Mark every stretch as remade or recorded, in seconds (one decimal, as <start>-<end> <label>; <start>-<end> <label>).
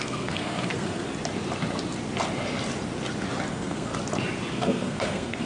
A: 0.0-1.1 remade; 1.1-3.5 recorded; 3.5-3.9 remade; 3.9-4.5 recorded; 4.5-5.5 remade